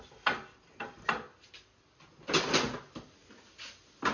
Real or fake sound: real